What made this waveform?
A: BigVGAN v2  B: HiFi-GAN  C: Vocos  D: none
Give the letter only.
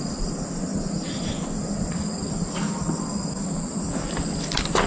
D